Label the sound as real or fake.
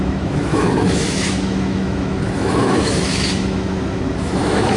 fake